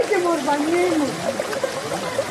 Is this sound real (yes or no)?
yes